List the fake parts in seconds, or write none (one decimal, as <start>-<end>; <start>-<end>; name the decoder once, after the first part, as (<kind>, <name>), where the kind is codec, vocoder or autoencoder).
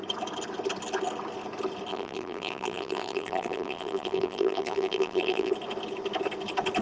1.9-5.5 (vocoder, BigVGAN v2)